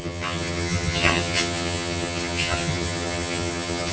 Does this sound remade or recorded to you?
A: remade